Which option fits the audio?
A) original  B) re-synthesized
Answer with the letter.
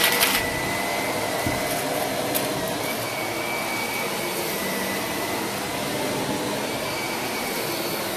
A